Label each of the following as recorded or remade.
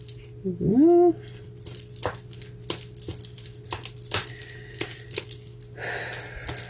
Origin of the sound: recorded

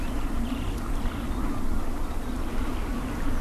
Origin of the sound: recorded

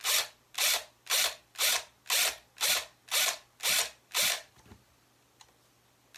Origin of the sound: recorded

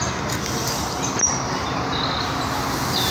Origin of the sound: recorded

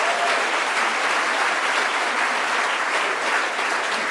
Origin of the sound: recorded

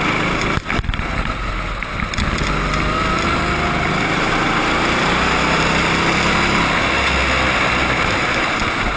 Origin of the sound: recorded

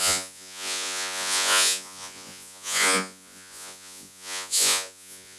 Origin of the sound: remade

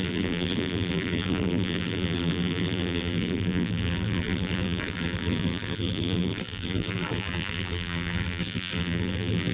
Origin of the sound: remade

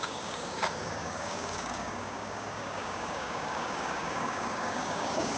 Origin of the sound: remade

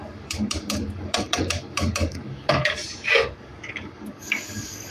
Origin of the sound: remade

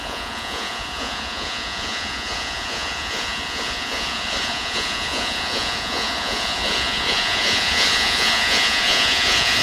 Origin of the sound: remade